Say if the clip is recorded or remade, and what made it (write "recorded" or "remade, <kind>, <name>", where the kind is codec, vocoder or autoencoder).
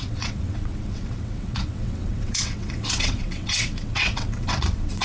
remade, vocoder, WaveNeXt